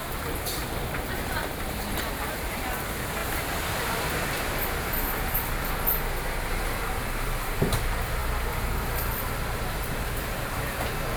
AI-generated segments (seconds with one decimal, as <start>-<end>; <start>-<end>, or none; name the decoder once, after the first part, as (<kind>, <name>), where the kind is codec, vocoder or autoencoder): 0.0-11.2 (vocoder, BigVGAN v2)